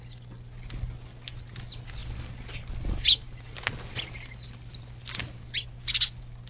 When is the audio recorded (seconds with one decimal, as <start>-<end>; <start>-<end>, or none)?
0.0-6.5